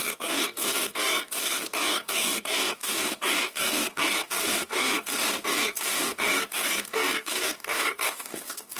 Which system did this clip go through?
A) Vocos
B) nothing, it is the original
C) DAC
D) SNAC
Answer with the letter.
C